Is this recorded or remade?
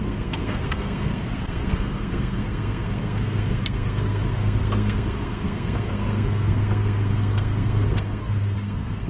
remade